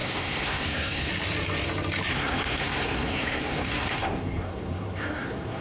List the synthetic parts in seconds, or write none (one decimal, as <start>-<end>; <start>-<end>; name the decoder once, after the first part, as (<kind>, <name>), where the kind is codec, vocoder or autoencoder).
0.0-1.1 (codec, SNAC); 2.1-5.6